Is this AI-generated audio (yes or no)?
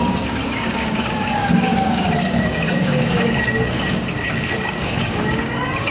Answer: yes